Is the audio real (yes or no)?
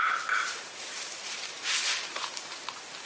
no